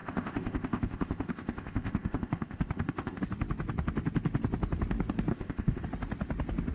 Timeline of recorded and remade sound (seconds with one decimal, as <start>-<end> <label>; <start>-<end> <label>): 0.0-3.2 remade; 3.2-5.3 recorded; 5.3-5.8 remade; 5.8-6.7 recorded